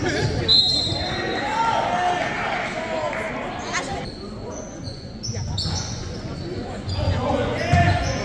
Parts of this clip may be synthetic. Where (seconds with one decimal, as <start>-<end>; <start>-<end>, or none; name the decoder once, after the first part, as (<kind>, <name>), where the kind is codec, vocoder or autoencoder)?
4.4-8.2 (vocoder, Vocos)